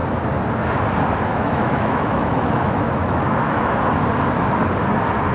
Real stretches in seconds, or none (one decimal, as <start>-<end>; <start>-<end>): 0.0-1.3; 3.7-5.3